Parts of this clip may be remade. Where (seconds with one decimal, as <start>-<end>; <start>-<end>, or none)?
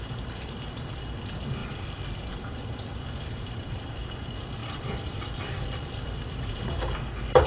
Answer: 1.6-3.7; 4.6-6.6